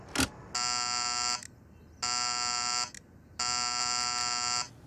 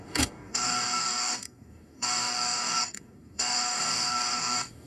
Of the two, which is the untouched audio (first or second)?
first